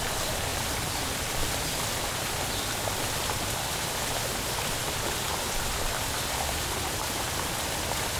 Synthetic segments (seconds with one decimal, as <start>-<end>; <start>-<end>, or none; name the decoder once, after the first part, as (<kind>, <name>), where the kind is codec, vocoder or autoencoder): 0.5-1.0 (vocoder, BigVGAN v2)